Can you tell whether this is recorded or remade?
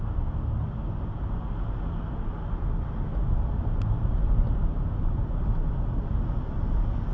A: recorded